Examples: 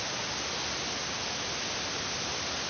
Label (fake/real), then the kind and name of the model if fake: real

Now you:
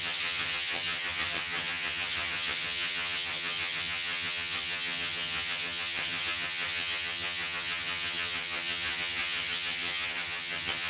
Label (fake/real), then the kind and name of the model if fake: fake, vocoder, HiFi-GAN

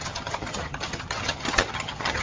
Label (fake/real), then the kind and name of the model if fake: fake, vocoder, HiFi-GAN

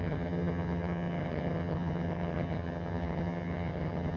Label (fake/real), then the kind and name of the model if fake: fake, vocoder, HiFi-GAN